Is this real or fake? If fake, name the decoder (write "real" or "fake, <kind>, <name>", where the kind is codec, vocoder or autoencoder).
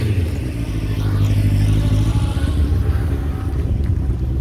real